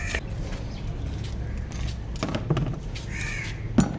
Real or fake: real